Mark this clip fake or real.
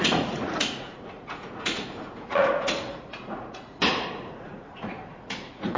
fake